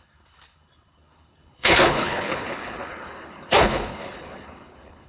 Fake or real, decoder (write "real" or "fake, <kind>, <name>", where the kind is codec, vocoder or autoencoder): fake, codec, HILCodec